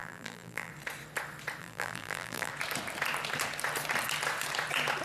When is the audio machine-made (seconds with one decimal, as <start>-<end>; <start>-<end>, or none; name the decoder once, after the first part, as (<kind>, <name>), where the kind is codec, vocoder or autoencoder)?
0.0-0.7 (vocoder, BigVGAN v2); 1.6-2.5

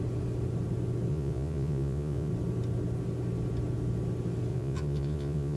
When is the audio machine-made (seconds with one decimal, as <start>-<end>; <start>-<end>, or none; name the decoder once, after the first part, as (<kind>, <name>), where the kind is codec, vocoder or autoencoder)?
1.1-2.3 (vocoder, Vocos); 4.5-5.6

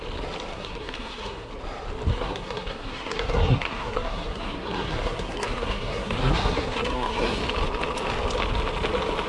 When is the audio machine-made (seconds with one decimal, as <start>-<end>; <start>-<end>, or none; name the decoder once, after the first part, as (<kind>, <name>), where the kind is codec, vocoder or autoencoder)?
0.5-1.5 (codec, SNAC); 2.1-7.4

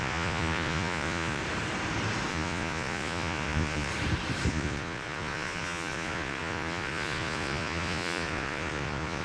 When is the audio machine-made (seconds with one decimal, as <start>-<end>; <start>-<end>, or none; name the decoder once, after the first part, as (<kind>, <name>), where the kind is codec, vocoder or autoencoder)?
0.0-1.4 (vocoder, Vocos); 2.3-3.9; 4.5-9.2